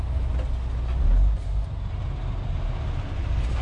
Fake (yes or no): no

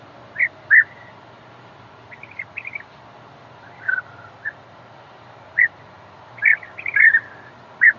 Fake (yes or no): no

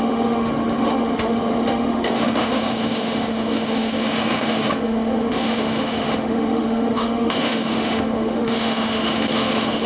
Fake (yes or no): yes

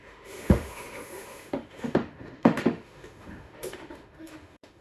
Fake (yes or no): yes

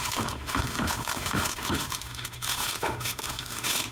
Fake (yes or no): yes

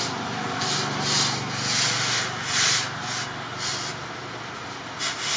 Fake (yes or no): no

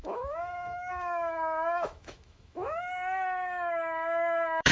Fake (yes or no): yes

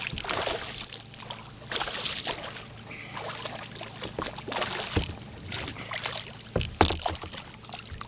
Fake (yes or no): no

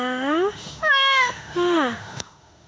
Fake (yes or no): yes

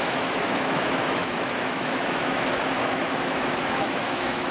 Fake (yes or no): yes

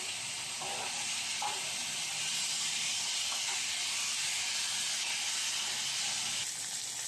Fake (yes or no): no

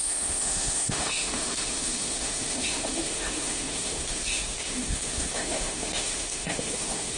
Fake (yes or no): yes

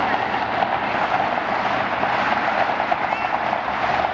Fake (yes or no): no